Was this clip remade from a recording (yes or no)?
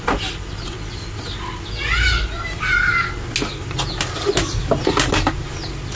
no